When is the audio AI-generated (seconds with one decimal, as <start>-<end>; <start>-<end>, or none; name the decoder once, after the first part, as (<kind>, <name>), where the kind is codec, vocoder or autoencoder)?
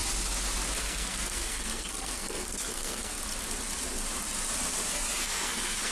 0.8-3.2 (codec, SNAC); 4.9-5.9